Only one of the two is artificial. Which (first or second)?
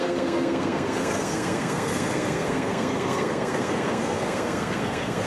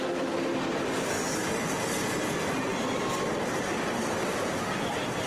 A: first